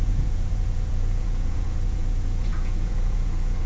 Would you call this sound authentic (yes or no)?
no